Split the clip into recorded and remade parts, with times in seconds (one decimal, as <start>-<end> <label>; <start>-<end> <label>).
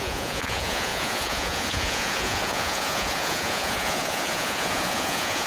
0.0-5.5 remade